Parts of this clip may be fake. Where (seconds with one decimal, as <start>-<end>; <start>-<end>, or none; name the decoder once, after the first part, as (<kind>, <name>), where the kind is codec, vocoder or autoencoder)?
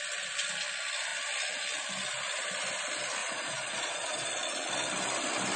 3.2-4.7 (vocoder, Vocos)